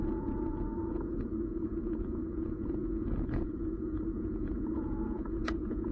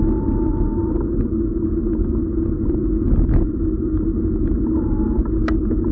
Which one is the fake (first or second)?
first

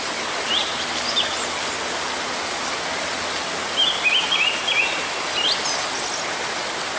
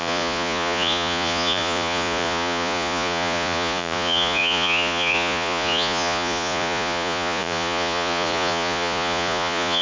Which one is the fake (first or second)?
second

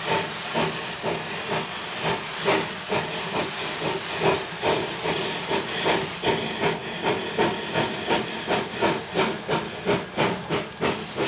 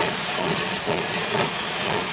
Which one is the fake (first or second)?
second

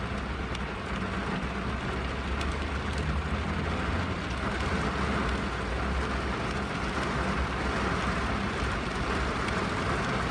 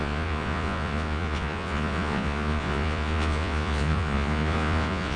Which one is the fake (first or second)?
second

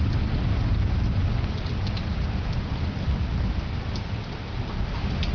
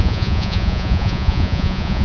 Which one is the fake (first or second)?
second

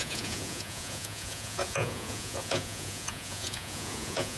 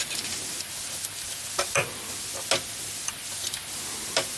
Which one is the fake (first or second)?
first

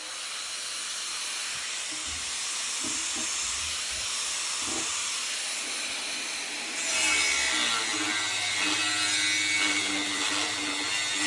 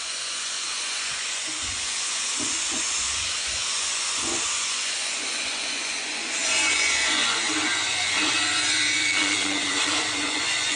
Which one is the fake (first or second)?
second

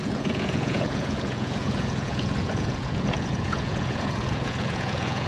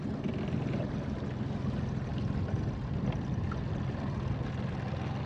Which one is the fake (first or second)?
first